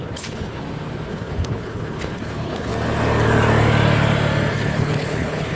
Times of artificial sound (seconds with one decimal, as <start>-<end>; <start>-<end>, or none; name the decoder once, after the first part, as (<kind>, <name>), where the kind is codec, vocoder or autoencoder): 0.0-0.6 (codec, HILCodec); 1.1-2.7; 4.5-5.6